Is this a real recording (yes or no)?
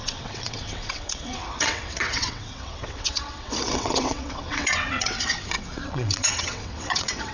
no